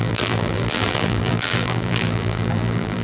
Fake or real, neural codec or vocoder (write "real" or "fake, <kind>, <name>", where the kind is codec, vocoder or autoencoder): fake, vocoder, BigVGAN v2